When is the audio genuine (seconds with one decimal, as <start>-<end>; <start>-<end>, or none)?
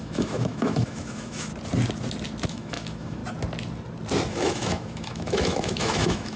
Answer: 1.5-2.5; 3.2-4.3